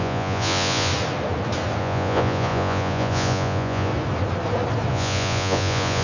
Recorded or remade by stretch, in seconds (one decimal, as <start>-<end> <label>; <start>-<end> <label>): 0.0-0.9 remade; 0.9-1.8 recorded; 1.8-3.9 remade; 3.9-4.9 recorded; 4.9-6.0 remade